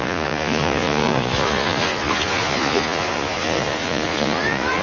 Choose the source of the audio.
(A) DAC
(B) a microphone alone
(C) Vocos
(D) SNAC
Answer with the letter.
C